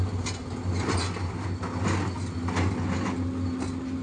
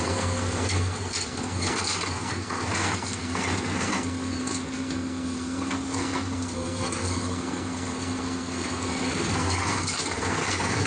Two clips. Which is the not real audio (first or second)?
second